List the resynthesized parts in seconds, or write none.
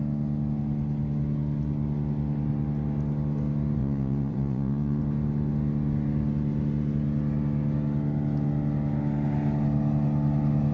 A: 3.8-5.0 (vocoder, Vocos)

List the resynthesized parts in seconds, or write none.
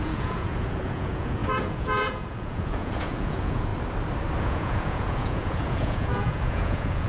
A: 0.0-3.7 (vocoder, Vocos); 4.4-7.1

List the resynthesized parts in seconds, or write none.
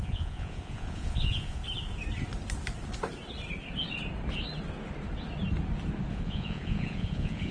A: 0.0-1.6 (vocoder, Vocos); 6.1-7.5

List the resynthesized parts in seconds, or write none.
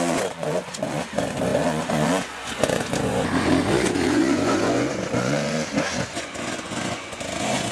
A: 0.0-7.7 (vocoder, Vocos)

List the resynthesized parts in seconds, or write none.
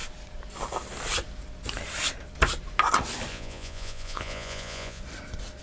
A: 3.3-5.0 (vocoder, Vocos)